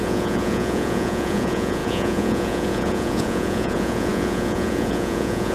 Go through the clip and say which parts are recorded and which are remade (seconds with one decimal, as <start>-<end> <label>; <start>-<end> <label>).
0.0-5.5 remade